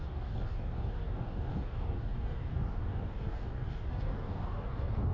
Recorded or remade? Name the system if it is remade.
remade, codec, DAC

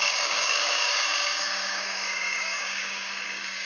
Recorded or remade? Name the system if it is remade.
remade, codec, DAC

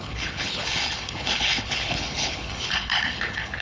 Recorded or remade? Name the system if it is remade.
remade, codec, HILCodec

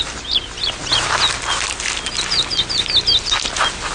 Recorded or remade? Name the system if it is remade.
recorded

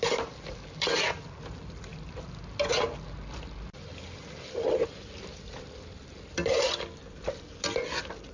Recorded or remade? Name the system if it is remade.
recorded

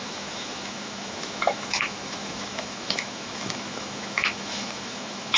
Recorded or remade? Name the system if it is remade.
remade, autoencoder, DAC-VAE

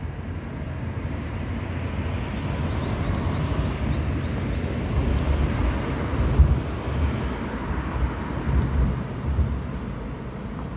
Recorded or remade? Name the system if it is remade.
recorded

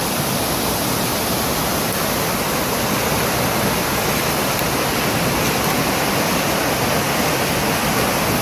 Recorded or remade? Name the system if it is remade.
recorded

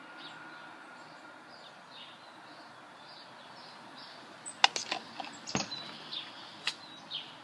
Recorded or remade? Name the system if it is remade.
recorded